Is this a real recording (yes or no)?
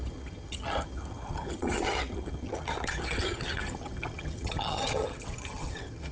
no